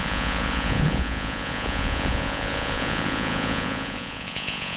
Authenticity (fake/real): fake